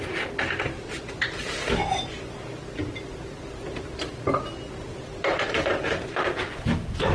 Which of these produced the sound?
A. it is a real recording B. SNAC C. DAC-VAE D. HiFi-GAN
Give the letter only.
A